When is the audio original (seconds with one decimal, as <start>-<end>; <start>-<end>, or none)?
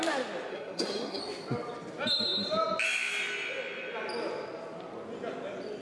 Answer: 0.0-0.5; 1.2-5.8